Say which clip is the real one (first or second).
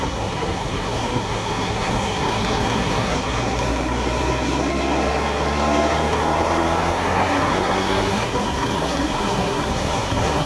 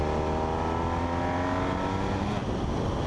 second